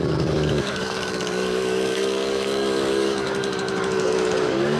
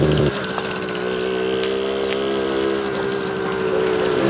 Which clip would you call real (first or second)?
second